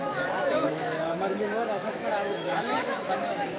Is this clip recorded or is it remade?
remade